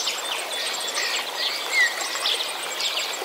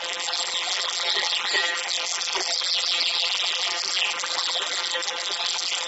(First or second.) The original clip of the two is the first